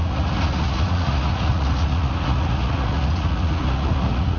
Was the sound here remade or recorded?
remade